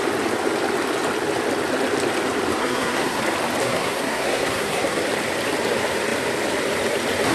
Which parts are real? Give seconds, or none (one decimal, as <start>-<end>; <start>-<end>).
0.0-2.6; 3.2-3.6; 5.0-7.3